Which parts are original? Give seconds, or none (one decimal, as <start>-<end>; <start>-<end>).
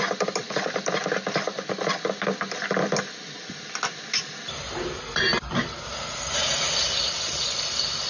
0.0-0.4; 1.6-8.1